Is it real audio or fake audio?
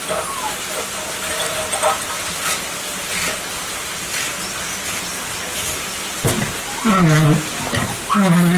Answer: real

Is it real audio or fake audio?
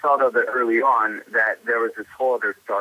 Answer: fake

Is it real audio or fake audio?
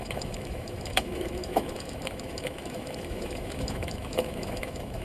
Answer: fake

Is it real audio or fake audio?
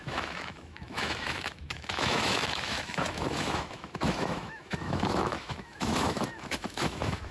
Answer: fake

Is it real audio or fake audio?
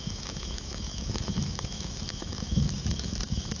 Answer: fake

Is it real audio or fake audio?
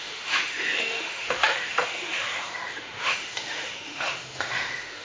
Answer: fake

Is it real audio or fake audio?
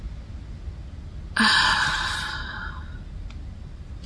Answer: real